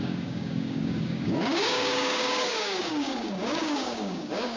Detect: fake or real fake